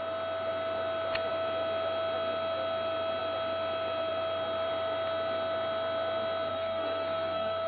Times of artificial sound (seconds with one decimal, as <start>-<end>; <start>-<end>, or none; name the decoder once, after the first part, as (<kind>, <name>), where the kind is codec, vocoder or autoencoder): 6.5-7.7 (codec, SNAC)